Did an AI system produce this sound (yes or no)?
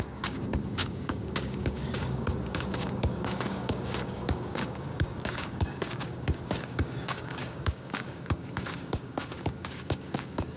yes